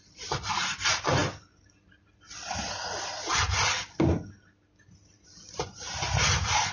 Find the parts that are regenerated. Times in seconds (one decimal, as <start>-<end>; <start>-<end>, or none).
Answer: none